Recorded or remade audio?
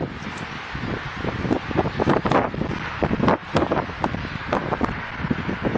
recorded